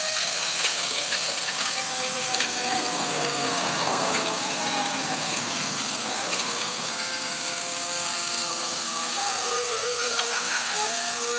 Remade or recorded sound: remade